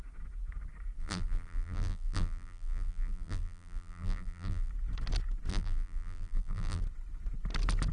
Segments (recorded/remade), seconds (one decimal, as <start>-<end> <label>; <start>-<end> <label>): 0.0-1.0 recorded; 1.0-4.7 remade; 4.7-5.5 recorded; 5.5-6.8 remade; 6.8-7.9 recorded